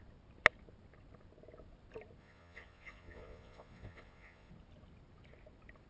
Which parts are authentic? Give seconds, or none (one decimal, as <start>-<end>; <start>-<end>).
0.0-2.2; 4.5-5.9